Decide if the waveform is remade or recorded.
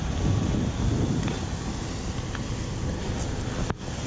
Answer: recorded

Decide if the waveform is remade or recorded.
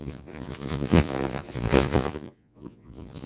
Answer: remade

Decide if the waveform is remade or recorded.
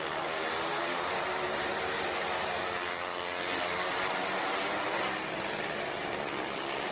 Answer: recorded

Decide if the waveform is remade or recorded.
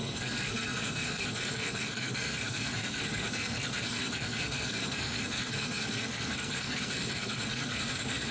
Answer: remade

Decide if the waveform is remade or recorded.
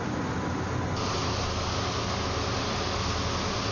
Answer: recorded